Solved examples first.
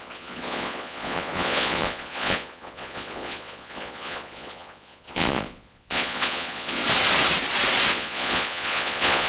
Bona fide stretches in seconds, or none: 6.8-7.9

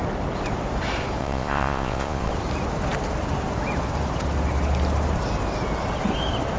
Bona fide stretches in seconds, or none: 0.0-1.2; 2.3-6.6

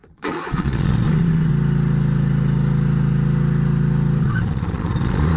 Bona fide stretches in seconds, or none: 1.5-4.2

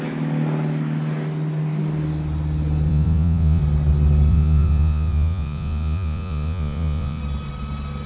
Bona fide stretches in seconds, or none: 0.0-2.9; 3.6-4.3; 7.2-8.1

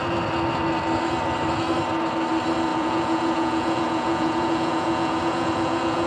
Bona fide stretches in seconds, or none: 0.0-2.7

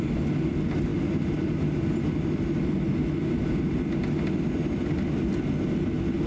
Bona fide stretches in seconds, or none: 0.0-6.3